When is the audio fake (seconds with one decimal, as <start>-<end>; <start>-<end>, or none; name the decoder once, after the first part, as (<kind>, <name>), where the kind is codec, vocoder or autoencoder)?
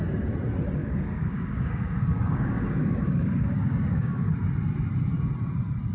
0.8-4.3 (codec, DAC)